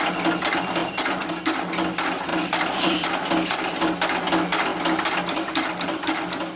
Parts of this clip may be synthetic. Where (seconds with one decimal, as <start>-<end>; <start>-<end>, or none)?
0.8-1.3; 2.3-3.1